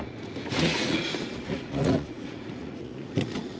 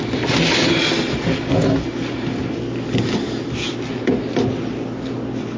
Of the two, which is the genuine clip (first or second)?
second